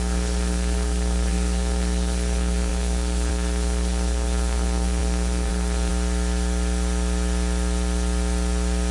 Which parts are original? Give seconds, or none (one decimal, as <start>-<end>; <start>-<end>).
5.9-8.9